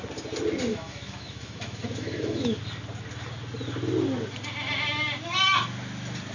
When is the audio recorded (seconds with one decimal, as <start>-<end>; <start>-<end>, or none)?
0.0-0.7; 2.6-6.3